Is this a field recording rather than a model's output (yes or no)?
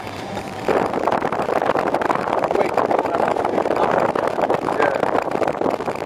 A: yes